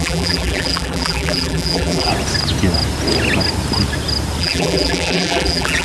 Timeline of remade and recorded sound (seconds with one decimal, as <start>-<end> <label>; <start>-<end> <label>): 0.0-2.1 remade; 2.1-4.4 recorded; 4.4-5.8 remade

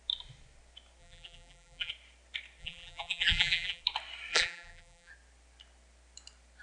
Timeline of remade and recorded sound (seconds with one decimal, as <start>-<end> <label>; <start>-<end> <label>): 0.0-1.0 recorded; 1.0-1.9 remade; 1.9-2.6 recorded; 2.6-3.8 remade; 3.8-4.3 recorded; 4.3-5.1 remade; 5.1-6.6 recorded

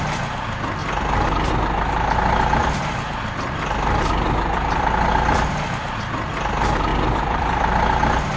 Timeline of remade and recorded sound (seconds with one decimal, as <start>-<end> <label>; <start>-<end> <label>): 0.0-0.8 recorded; 0.8-1.5 remade; 1.5-2.6 recorded; 2.6-6.1 remade; 6.1-6.9 recorded; 6.9-7.7 remade; 7.7-8.4 recorded

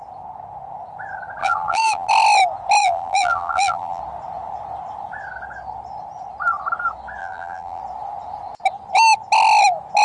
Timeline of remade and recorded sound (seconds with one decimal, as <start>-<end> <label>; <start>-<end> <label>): 0.0-1.4 recorded; 1.4-2.1 remade; 2.1-2.8 recorded; 2.8-4.0 remade; 4.0-7.2 recorded; 7.2-7.8 remade; 7.8-10.0 recorded

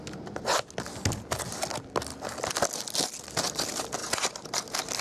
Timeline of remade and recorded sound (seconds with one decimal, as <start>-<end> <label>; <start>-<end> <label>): 0.0-5.0 recorded